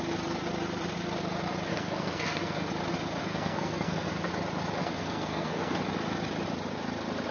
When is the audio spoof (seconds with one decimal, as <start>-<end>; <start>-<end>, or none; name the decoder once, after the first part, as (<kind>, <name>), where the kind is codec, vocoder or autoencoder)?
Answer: 1.7-2.7 (codec, SNAC); 3.2-4.3; 4.8-5.8

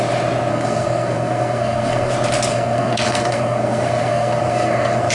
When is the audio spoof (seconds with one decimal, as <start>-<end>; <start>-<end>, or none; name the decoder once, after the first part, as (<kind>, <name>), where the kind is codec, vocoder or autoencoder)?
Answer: 0.5-2.1 (codec, SNAC); 2.5-5.1

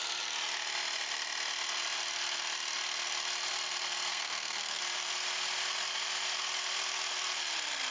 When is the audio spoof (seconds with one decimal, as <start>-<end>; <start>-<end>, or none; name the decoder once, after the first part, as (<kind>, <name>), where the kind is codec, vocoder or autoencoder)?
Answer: 4.1-4.8 (codec, SNAC)

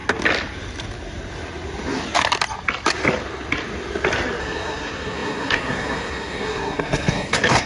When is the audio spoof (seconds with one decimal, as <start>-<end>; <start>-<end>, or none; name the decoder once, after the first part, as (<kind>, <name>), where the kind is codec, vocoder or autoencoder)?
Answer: 4.4-7.7 (codec, SNAC)

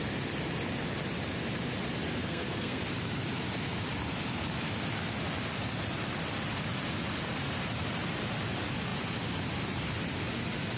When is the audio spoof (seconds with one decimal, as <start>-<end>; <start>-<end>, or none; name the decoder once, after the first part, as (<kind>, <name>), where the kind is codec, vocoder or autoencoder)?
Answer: 2.2-2.8 (codec, SNAC)

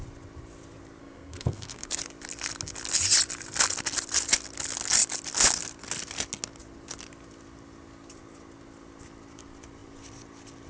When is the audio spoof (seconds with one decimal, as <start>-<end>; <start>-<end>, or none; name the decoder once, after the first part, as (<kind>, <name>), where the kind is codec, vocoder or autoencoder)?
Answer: 1.0-1.9 (codec, SNAC)

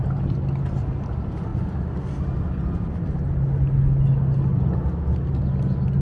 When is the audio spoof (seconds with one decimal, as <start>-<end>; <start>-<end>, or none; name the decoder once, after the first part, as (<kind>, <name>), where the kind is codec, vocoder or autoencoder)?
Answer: none

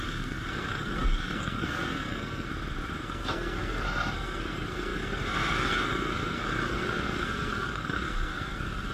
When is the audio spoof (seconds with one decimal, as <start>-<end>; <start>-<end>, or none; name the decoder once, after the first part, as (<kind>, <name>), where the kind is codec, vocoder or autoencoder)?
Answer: 0.0-2.5 (codec, SNAC); 3.0-8.9